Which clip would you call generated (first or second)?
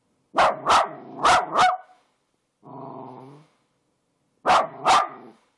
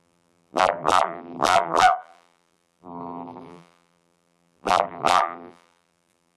second